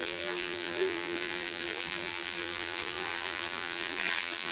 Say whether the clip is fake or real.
fake